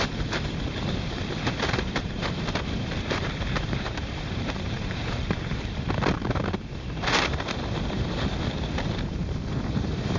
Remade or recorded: remade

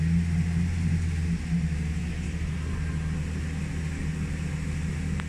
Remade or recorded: recorded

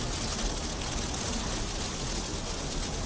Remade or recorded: recorded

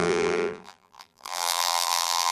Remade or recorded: remade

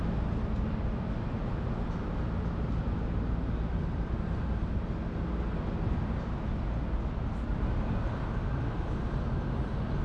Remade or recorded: recorded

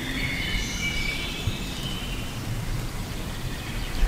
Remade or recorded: remade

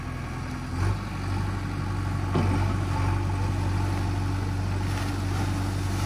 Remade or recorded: recorded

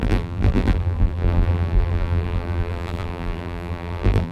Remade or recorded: remade